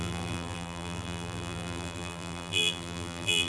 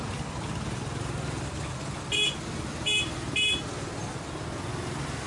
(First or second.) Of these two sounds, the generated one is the first